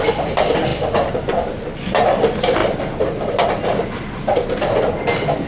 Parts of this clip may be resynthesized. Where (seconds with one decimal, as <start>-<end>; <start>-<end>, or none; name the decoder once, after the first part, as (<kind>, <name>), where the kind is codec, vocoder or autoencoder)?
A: none